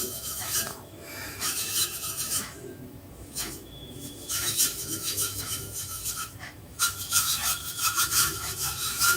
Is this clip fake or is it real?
fake